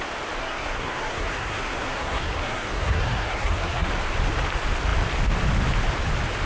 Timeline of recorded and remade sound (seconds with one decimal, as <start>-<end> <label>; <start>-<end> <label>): 0.0-0.4 recorded; 0.4-3.9 remade; 3.9-6.5 recorded